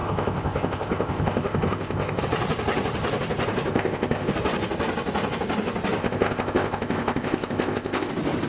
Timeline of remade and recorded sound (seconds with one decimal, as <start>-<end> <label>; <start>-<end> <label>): 0.0-2.2 remade; 2.2-3.7 recorded; 3.7-4.3 remade; 4.3-6.0 recorded; 6.0-8.1 remade; 8.1-8.5 recorded